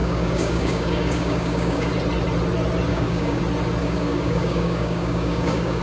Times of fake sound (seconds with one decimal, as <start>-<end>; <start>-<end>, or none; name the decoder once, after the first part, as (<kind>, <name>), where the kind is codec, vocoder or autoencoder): 0.0-1.9 (codec, DAC); 2.9-3.4; 3.8-5.8